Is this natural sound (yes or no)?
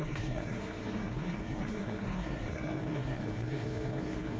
no